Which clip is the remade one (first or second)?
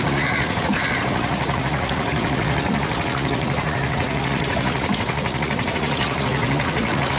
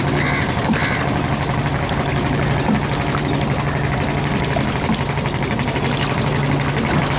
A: first